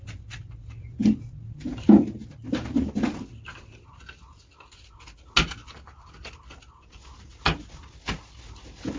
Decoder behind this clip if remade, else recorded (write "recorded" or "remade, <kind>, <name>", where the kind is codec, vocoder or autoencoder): recorded